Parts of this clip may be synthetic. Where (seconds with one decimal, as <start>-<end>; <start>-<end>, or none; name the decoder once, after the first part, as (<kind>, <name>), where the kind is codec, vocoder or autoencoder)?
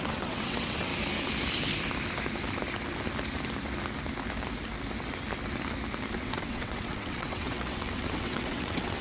0.0-0.9 (vocoder, WaveNeXt); 6.1-9.0